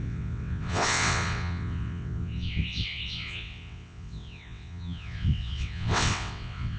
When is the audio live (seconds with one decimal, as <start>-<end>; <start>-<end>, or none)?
none